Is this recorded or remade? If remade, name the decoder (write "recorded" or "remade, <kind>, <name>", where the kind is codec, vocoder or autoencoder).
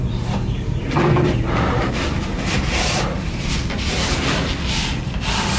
recorded